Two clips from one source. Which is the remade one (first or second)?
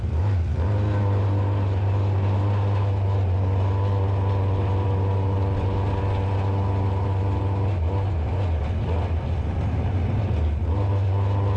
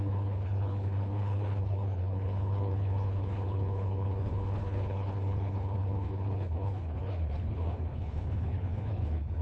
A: second